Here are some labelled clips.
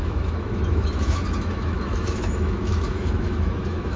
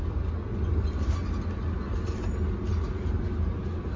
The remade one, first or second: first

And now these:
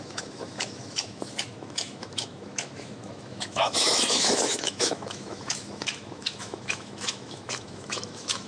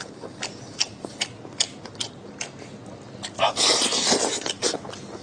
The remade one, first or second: first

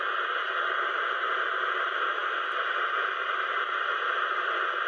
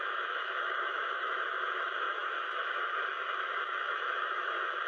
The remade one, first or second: second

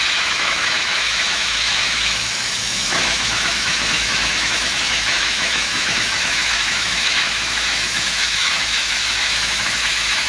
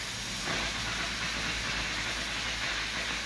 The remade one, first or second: first